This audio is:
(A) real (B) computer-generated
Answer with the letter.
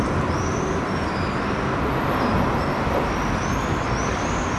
A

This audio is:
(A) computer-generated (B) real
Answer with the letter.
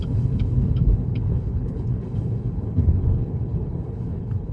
A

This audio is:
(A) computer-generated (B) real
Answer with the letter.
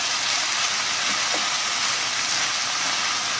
B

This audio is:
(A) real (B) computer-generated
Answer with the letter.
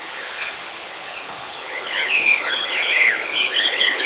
B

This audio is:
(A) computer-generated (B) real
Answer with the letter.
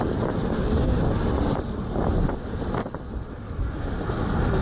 B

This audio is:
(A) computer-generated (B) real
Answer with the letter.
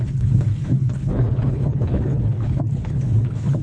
A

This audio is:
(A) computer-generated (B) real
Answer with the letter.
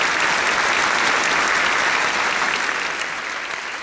B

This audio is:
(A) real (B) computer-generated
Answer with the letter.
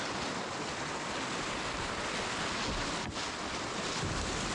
A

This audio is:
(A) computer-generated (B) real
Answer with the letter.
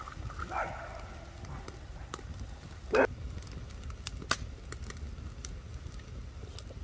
B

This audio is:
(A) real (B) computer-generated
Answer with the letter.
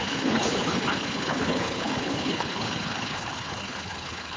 B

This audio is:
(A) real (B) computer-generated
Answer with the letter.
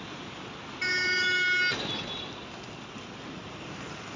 A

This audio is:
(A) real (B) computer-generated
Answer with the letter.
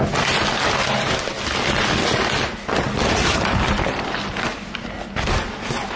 A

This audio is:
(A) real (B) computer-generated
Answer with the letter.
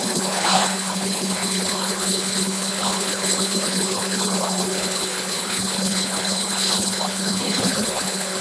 B